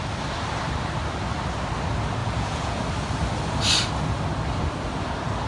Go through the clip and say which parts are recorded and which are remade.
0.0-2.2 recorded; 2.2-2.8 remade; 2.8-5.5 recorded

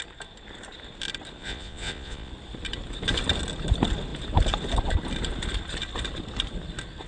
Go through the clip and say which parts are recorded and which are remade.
0.0-1.4 recorded; 1.4-2.3 remade; 2.3-7.1 recorded

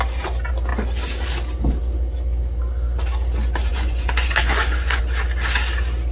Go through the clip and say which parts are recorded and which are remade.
0.0-3.7 recorded; 3.7-5.0 remade; 5.0-6.1 recorded

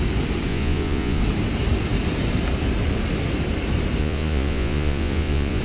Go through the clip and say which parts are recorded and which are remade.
0.0-0.5 recorded; 0.5-1.2 remade; 1.2-4.0 recorded; 4.0-5.6 remade

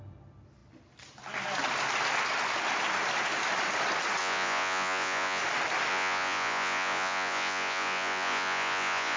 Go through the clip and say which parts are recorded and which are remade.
0.0-4.2 recorded; 4.2-5.4 remade; 5.4-5.9 recorded; 5.9-9.2 remade